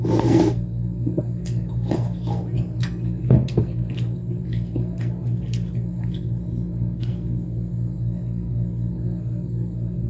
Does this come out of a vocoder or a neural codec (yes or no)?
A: yes